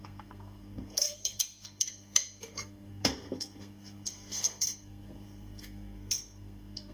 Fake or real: fake